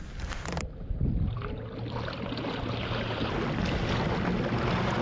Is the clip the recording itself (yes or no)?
yes